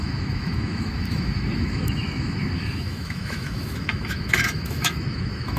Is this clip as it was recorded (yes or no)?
no